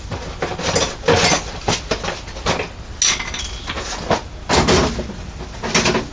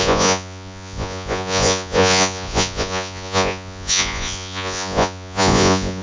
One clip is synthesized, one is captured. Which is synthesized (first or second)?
second